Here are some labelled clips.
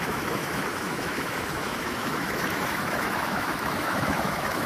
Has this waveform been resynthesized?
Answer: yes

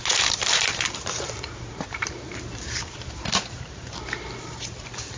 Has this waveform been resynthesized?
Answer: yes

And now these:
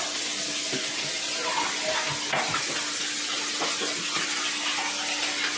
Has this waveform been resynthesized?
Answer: no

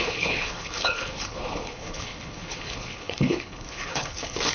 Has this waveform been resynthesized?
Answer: yes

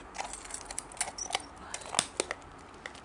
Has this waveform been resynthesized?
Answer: no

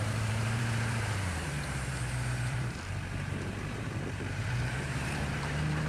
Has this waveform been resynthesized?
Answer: yes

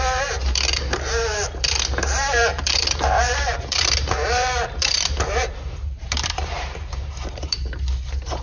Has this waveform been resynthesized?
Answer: yes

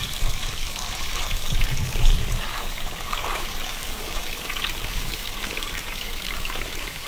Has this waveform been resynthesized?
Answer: yes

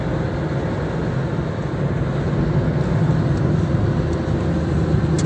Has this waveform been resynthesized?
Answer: no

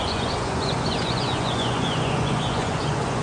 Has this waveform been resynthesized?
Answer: yes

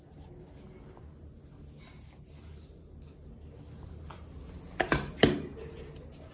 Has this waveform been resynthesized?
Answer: no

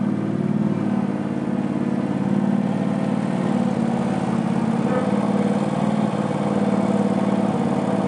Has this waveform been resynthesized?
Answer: no